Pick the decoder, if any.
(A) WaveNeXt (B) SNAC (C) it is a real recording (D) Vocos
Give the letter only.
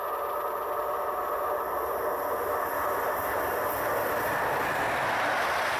C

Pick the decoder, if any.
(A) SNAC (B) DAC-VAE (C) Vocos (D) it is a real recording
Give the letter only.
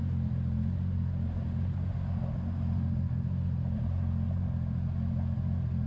D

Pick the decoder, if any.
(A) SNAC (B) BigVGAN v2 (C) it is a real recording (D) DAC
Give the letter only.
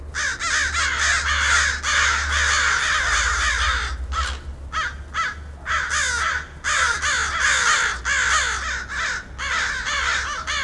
C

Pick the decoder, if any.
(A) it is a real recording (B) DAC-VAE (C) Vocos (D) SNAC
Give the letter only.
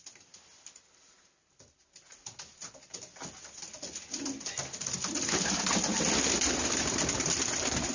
A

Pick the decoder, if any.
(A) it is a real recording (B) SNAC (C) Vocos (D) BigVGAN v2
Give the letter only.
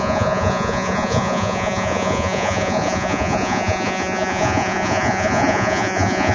C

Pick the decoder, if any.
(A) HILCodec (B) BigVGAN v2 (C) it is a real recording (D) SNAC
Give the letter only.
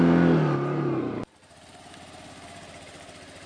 C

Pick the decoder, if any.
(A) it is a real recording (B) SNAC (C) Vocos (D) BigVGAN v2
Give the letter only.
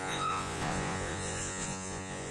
C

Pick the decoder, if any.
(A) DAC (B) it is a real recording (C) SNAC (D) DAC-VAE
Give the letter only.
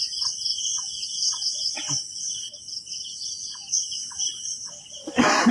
B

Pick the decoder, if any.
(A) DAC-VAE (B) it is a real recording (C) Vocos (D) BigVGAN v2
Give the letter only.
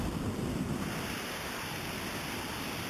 D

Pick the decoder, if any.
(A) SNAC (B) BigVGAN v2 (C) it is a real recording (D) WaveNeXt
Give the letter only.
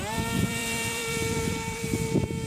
B